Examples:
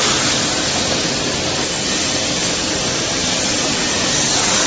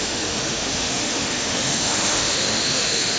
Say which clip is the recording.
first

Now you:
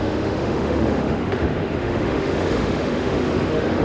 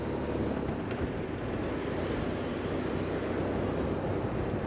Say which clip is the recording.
second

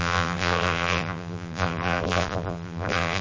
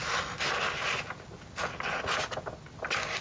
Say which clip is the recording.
second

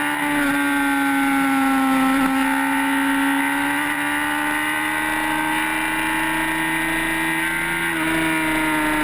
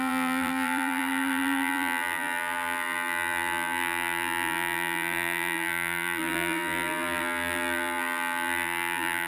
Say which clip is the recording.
first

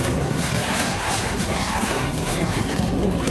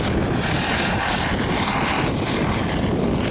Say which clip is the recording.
second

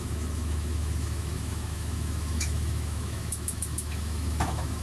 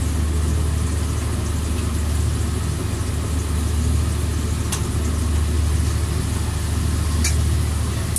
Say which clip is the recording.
second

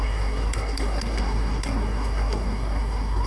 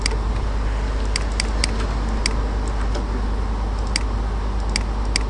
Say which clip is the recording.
second